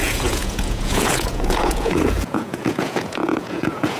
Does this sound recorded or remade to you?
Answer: remade